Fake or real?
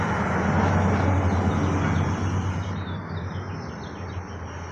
real